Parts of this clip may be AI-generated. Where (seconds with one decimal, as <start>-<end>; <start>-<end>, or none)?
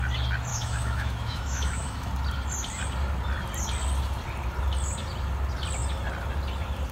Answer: 0.5-2.1